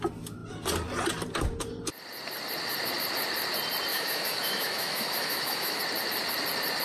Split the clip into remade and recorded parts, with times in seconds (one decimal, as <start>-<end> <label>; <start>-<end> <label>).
0.0-3.9 recorded; 3.9-5.8 remade; 5.8-6.8 recorded